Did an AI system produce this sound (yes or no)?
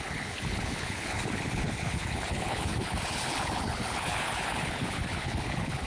yes